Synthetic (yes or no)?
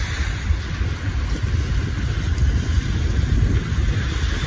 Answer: no